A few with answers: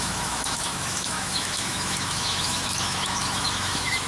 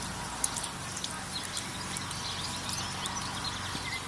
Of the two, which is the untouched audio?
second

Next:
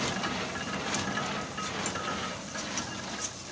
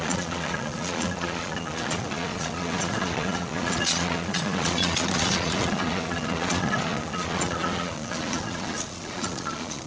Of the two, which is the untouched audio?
first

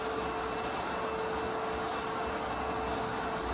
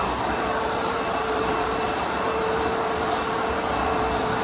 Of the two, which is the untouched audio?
first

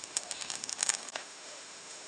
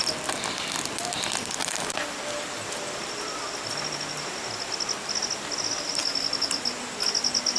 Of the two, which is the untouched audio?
second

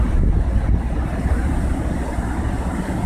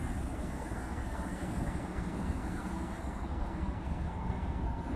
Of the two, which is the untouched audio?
first